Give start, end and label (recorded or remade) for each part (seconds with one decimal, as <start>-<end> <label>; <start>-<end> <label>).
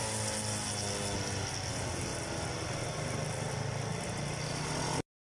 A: 0.0-5.3 recorded